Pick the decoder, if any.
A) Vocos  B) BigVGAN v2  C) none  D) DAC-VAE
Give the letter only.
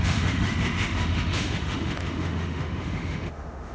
D